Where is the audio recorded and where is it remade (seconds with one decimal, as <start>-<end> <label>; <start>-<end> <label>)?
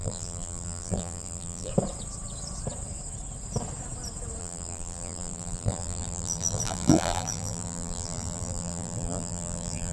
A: 0.0-1.7 remade; 1.7-4.4 recorded; 4.4-9.9 remade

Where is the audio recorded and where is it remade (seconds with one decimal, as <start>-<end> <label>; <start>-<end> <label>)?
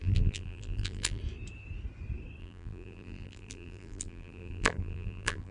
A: 0.0-1.2 remade; 1.2-2.4 recorded; 2.4-5.5 remade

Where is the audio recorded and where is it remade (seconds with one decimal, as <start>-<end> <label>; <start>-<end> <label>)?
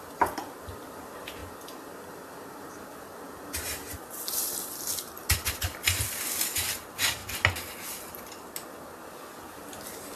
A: 0.0-1.4 remade; 1.4-4.1 recorded; 4.1-7.2 remade; 7.2-9.5 recorded; 9.5-10.2 remade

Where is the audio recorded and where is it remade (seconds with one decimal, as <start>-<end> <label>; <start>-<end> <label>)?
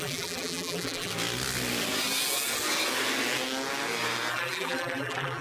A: 0.0-1.1 remade; 1.1-4.3 recorded; 4.3-5.4 remade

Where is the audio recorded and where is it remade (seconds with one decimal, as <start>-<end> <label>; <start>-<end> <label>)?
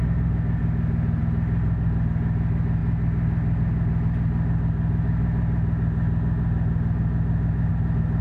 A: 0.0-8.2 recorded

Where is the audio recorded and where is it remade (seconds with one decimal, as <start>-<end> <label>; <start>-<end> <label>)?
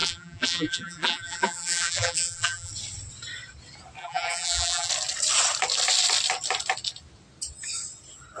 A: 0.0-2.7 remade; 2.7-4.0 recorded; 4.0-4.9 remade; 4.9-8.4 recorded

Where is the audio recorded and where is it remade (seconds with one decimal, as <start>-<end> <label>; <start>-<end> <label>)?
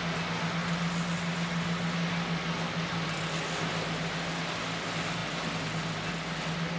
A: 0.0-6.8 recorded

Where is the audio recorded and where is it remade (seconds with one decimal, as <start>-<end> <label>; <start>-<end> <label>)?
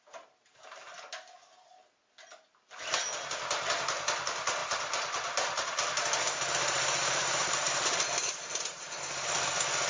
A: 0.0-4.6 recorded; 4.6-9.1 remade; 9.1-9.9 recorded